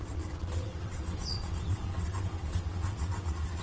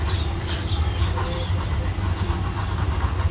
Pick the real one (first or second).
second